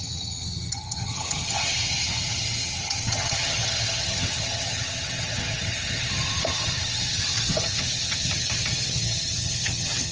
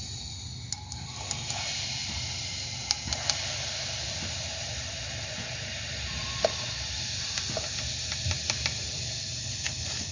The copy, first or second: first